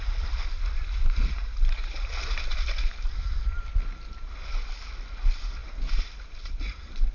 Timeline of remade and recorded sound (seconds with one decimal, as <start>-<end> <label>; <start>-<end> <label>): 0.0-7.1 recorded